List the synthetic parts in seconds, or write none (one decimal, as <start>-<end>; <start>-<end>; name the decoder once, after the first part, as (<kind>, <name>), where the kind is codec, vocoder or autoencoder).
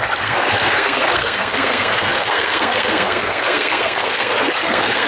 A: 0.0-5.1 (codec, SNAC)